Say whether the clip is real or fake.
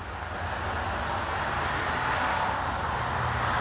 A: real